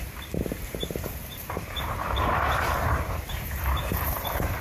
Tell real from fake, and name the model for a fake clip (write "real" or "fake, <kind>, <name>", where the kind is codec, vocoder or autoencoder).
fake, vocoder, BigVGAN v2